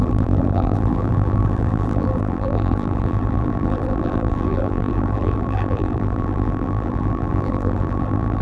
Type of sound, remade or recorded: remade